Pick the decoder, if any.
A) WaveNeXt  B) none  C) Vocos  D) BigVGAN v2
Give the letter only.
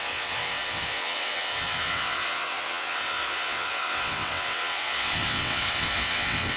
A